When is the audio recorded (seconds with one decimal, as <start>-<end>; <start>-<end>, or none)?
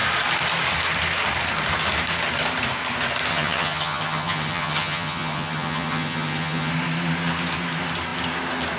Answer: 0.0-3.3; 6.7-8.8